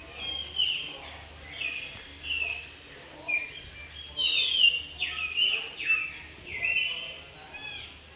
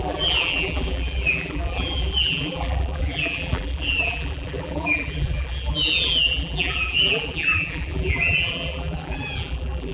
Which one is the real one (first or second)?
first